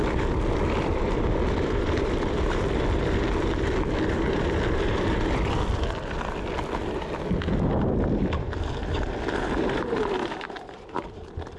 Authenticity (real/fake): fake